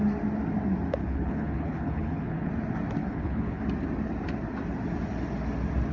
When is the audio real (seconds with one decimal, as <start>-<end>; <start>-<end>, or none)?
0.0-1.0; 2.5-3.0; 3.6-5.9

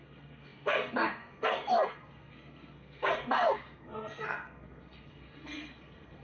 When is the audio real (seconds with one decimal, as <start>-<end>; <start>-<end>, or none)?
none

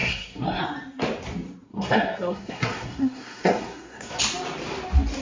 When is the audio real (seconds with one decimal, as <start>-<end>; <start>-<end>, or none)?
0.6-1.7; 4.2-5.2

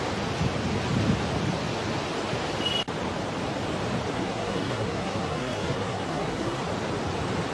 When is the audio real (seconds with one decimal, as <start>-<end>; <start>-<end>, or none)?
0.0-4.1; 6.6-7.5

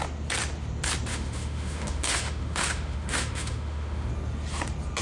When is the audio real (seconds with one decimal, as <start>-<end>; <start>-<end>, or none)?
0.0-1.1; 4.1-5.0

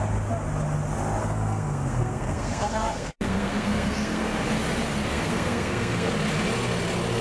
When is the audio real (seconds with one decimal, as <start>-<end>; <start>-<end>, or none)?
0.0-1.2; 4.4-5.1; 6.1-7.2

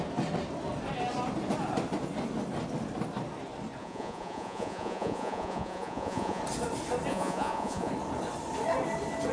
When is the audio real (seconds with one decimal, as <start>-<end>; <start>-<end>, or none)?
0.0-3.8; 6.4-7.1; 7.9-9.3